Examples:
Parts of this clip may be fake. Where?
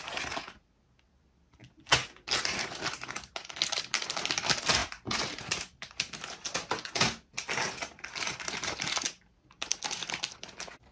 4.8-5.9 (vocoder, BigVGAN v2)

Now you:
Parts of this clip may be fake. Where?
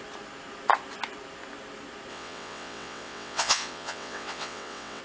2.1-5.0 (vocoder, WaveNeXt)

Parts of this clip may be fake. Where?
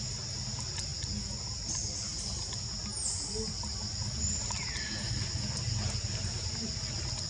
none